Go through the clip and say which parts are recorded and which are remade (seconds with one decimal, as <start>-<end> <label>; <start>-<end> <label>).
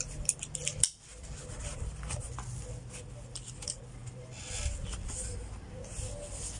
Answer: 0.0-4.0 remade; 4.0-6.6 recorded